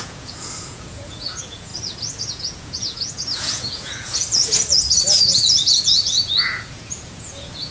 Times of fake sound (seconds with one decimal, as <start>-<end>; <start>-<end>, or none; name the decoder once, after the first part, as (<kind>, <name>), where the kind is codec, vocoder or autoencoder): 0.0-1.7 (vocoder, Vocos); 2.3-7.7